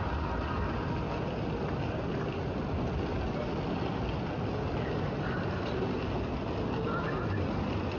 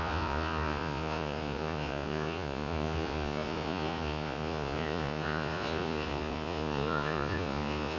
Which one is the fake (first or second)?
second